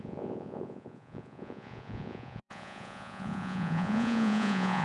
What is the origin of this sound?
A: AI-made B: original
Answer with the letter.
A